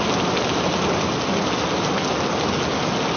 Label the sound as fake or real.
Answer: real